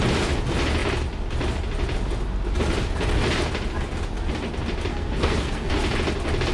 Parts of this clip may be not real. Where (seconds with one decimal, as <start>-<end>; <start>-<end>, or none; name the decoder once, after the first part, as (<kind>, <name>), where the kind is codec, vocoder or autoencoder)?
4.9-5.7 (codec, SNAC)